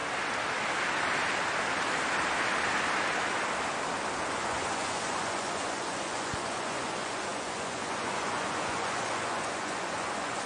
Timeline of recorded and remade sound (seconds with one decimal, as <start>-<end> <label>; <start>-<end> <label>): 0.0-4.3 recorded; 4.3-10.5 remade